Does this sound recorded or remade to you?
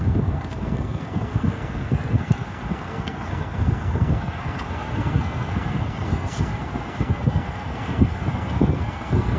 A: remade